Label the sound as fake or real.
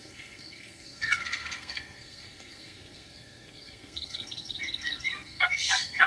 fake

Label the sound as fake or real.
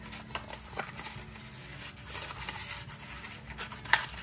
real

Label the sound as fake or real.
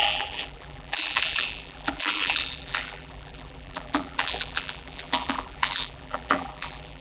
fake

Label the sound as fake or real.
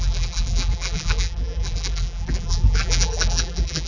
fake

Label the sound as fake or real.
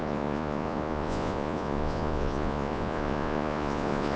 fake